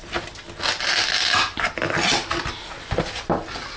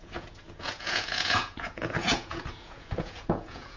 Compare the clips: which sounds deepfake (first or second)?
second